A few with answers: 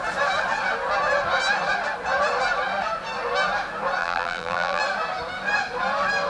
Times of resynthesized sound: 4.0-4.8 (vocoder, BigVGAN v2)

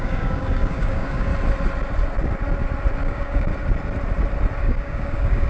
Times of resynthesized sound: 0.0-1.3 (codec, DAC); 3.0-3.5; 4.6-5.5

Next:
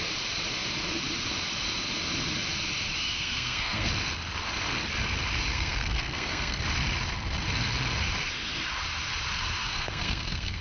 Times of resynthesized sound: 3.1-3.9 (codec, SNAC); 5.5-6.6; 9.6-10.6

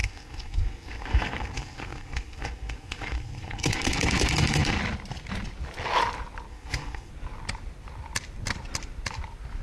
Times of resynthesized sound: 0.0-4.8 (codec, SNAC); 6.5-7.1

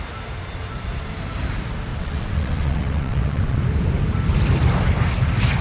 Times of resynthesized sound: 1.9-3.6 (vocoder, WaveNeXt)

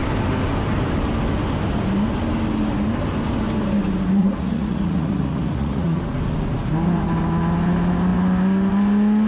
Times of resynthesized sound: 4.2-6.0 (vocoder, Vocos)

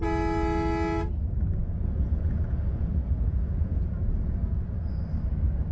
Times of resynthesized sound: 1.6-5.0 (vocoder, Vocos)